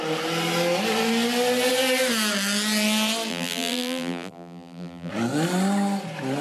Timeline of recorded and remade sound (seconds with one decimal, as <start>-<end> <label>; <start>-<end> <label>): 0.0-3.3 recorded; 3.3-5.1 remade; 5.1-6.4 recorded